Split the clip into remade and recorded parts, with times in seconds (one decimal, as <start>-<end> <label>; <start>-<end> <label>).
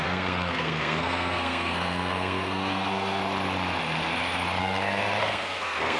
0.0-3.2 remade; 3.2-4.6 recorded; 4.6-6.0 remade